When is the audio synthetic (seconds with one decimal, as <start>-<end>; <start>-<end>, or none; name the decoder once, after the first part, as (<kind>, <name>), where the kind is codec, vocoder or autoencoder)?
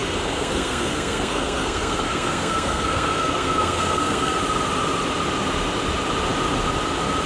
0.0-4.4 (codec, SNAC)